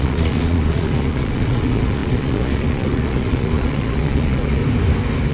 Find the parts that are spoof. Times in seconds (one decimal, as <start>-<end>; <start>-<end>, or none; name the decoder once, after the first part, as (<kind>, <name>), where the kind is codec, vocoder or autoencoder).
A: 0.0-4.6 (vocoder, Vocos)